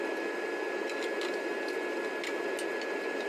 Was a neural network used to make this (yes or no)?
no